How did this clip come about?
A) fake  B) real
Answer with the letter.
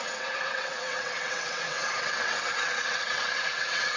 A